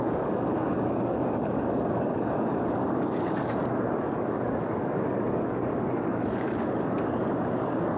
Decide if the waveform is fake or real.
fake